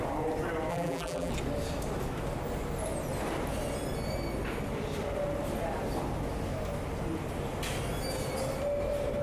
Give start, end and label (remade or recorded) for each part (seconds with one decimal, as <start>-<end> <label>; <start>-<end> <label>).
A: 0.0-0.7 recorded; 0.7-1.3 remade; 1.3-9.2 recorded